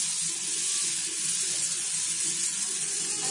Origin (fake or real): fake